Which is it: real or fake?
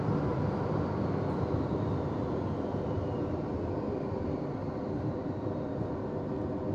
real